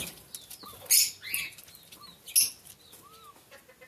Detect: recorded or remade recorded